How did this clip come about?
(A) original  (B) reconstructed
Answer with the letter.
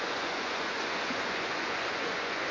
B